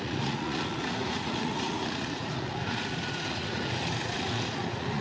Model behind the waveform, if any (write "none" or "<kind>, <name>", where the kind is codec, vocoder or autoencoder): vocoder, Vocos